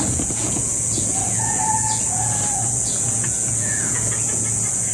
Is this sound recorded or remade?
remade